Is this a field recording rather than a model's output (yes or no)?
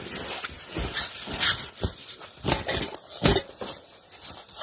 yes